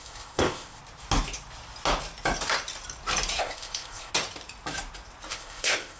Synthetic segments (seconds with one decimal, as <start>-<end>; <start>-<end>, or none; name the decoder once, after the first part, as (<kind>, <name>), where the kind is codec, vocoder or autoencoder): 0.0-0.8 (codec, ZipCodec); 3.4-4.1; 5.3-6.0